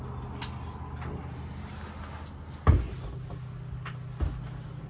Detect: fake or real real